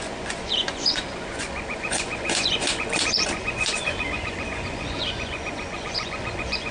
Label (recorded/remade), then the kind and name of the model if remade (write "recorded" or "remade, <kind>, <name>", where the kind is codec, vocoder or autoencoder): remade, vocoder, Vocos